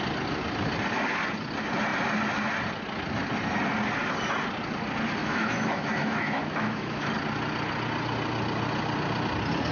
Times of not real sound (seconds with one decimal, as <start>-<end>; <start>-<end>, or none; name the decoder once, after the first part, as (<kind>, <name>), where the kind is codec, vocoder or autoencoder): 5.2-7.1 (autoencoder, DAC-VAE)